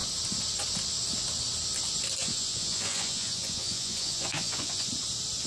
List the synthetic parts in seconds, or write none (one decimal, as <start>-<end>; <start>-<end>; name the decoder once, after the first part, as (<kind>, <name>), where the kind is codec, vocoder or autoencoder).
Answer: 2.2-4.9 (vocoder, Vocos)